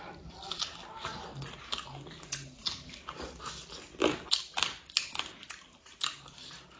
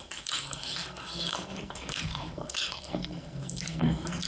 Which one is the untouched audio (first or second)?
first